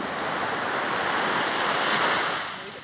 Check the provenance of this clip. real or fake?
real